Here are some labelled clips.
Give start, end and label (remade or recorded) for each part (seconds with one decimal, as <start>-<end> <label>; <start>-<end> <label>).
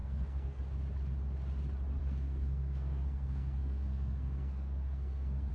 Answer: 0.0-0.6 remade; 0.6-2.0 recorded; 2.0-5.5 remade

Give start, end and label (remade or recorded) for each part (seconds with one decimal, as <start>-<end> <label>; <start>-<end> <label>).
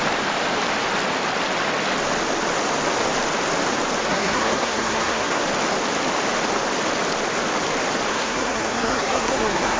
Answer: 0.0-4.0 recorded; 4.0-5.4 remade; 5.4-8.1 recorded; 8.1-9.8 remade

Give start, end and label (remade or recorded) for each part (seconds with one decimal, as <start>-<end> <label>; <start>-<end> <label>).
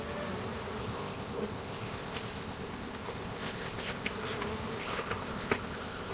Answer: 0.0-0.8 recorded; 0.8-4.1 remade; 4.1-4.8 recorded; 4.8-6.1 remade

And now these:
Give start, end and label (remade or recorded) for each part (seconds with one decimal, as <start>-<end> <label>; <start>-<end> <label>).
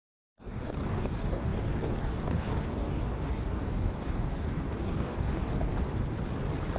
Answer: 0.0-5.7 remade; 5.7-6.8 recorded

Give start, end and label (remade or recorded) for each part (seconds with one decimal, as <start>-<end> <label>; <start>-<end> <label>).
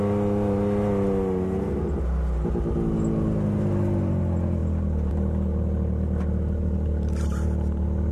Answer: 0.0-8.1 recorded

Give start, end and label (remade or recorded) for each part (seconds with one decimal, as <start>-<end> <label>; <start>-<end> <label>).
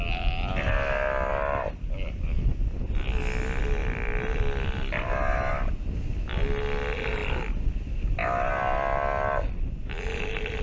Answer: 0.0-10.6 recorded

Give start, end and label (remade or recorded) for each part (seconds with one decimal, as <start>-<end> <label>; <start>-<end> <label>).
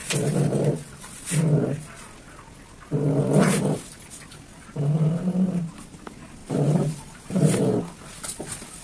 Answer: 0.0-6.4 recorded; 6.4-7.6 remade; 7.6-8.8 recorded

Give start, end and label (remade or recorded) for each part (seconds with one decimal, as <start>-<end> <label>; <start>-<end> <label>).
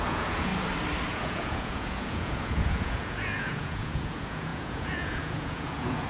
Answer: 0.0-0.5 remade; 0.5-1.1 recorded; 1.1-6.1 remade